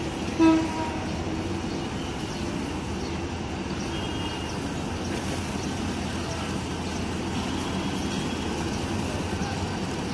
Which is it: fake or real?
real